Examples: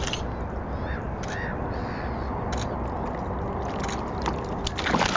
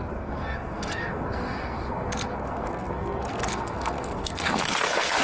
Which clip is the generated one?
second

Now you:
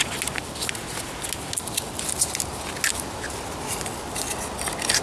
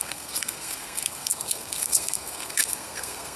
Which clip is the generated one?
second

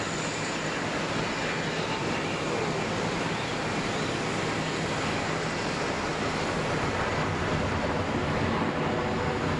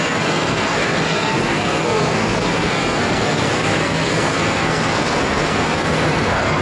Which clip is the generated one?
second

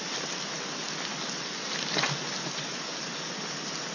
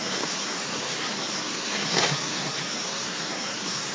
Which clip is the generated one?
second